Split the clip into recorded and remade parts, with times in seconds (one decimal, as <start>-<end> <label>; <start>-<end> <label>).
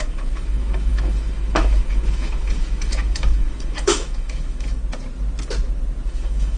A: 0.0-4.8 remade; 4.8-6.1 recorded; 6.1-6.6 remade